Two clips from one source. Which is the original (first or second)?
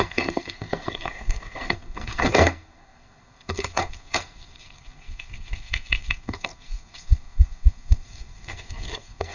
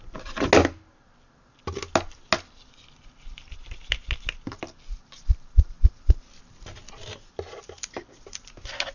second